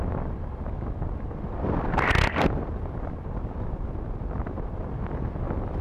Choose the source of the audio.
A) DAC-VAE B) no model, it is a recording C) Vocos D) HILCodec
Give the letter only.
B